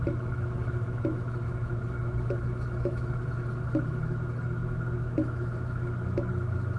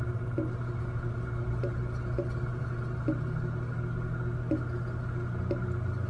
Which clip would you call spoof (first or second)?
first